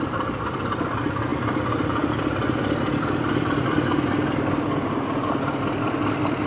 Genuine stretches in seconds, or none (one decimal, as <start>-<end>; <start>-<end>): 0.0-6.5